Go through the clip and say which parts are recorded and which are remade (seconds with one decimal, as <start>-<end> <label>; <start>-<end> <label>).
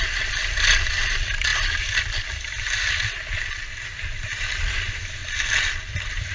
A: 0.0-6.3 recorded